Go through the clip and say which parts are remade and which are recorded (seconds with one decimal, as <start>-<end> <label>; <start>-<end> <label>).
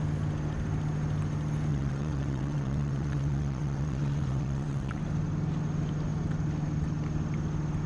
0.0-1.7 recorded; 1.7-5.0 remade; 5.0-7.9 recorded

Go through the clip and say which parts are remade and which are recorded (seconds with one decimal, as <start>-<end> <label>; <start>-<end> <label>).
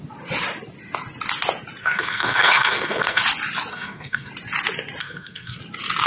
0.0-1.8 recorded; 1.8-3.2 remade; 3.2-3.7 recorded; 3.7-4.3 remade; 4.3-5.0 recorded; 5.0-5.6 remade; 5.6-6.1 recorded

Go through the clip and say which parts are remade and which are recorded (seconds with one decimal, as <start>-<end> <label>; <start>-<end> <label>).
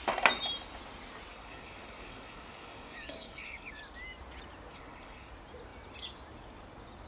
0.0-1.3 recorded; 1.3-3.8 remade; 3.8-4.7 recorded; 4.7-5.3 remade; 5.3-7.1 recorded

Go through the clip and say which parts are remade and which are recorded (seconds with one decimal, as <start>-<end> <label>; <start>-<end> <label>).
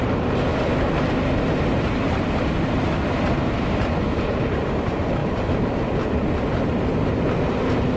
0.0-5.2 recorded; 5.2-5.9 remade; 5.9-8.0 recorded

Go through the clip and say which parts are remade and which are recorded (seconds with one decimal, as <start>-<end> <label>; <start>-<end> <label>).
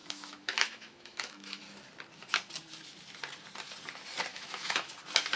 0.0-1.6 remade; 1.6-4.3 recorded; 4.3-4.9 remade; 4.9-5.4 recorded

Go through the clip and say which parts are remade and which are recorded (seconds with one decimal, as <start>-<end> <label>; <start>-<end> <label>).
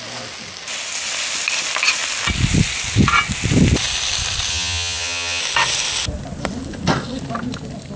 0.0-4.5 recorded; 4.5-5.4 remade; 5.4-8.0 recorded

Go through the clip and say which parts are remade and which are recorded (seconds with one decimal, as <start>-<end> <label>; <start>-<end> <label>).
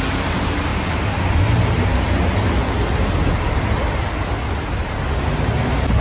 0.0-6.0 recorded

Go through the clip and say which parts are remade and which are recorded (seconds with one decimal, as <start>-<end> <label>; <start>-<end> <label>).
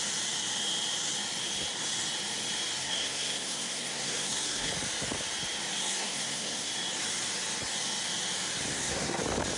0.0-2.8 recorded; 2.8-4.7 remade; 4.7-5.8 recorded; 5.8-6.7 remade; 6.7-8.7 recorded; 8.7-9.2 remade; 9.2-9.6 recorded